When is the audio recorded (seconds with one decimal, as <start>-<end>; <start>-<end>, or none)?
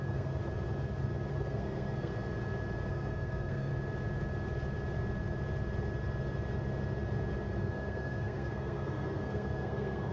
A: 0.4-1.3; 2.1-2.9; 3.7-7.6